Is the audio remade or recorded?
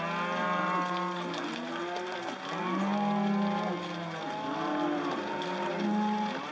recorded